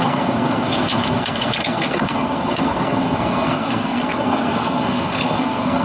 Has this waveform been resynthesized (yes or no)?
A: yes